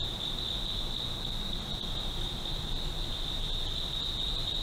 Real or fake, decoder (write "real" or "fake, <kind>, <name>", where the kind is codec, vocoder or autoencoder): real